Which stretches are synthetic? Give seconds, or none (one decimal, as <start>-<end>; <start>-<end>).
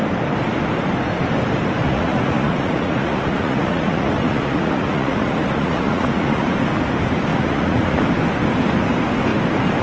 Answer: 1.8-6.5; 7.3-8.0